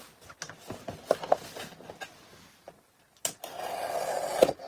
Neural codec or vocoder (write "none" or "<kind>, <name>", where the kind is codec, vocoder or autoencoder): none